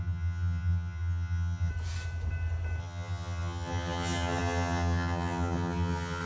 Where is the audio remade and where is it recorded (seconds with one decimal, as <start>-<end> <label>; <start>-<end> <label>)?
0.0-1.7 remade; 1.7-2.8 recorded; 2.8-6.3 remade